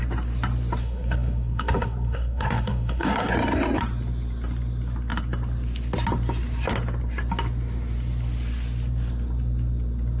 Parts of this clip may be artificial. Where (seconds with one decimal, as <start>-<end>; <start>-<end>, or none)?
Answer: 0.8-3.3